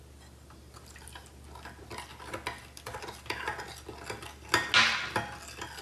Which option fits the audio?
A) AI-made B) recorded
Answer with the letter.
B